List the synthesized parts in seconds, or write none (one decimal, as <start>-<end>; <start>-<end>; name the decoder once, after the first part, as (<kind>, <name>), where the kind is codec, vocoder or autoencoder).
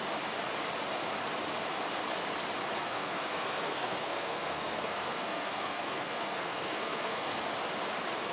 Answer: 2.8-7.4 (codec, SNAC)